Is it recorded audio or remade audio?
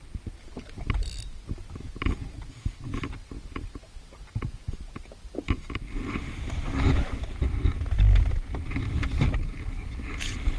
recorded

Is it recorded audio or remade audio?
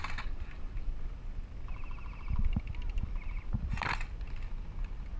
recorded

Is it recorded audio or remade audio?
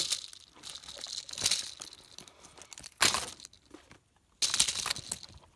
recorded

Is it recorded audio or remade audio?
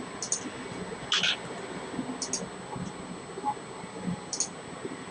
recorded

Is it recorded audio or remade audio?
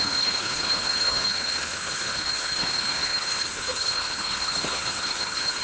remade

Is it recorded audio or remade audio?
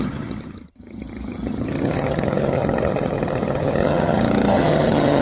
remade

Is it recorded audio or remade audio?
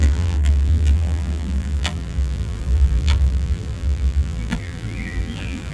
remade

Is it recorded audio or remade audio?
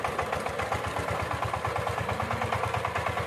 recorded